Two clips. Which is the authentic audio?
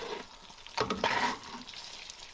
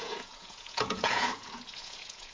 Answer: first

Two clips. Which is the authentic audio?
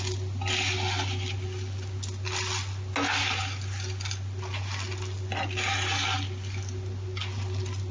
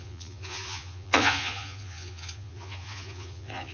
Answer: first